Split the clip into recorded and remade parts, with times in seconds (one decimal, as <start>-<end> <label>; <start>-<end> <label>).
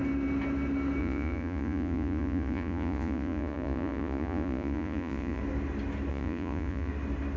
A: 0.0-1.0 recorded; 1.0-5.4 remade; 5.4-6.1 recorded; 6.1-6.9 remade; 6.9-7.4 recorded